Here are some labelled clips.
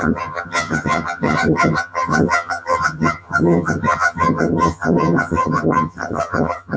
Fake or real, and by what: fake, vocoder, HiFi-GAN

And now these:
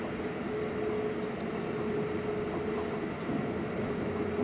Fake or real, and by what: real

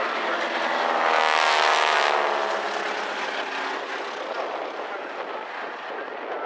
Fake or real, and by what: real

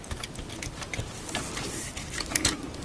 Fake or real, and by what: real